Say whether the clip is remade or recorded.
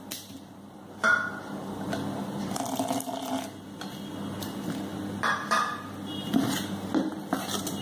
recorded